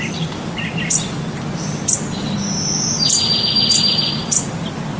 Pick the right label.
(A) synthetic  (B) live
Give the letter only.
B